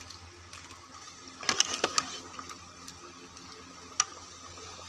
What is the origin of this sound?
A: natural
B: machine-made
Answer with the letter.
A